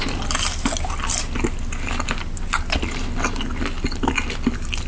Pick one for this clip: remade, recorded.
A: recorded